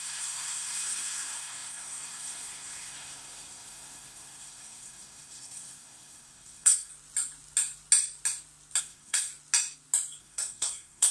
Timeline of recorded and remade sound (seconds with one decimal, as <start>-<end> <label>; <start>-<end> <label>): 0.0-6.9 remade; 6.9-8.8 recorded; 8.8-9.3 remade; 9.3-10.2 recorded; 10.2-11.1 remade